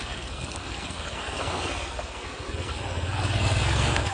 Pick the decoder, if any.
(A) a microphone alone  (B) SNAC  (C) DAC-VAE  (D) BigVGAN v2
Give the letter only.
B